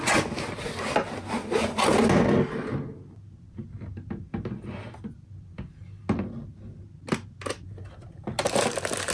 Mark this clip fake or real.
real